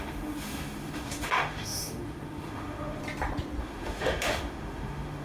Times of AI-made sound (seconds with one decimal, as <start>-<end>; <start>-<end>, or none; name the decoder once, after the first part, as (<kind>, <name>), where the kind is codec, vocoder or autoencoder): 0.0-3.0 (autoencoder, DAC-VAE); 3.6-5.2